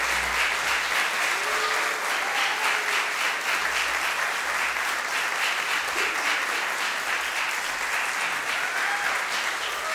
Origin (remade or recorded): recorded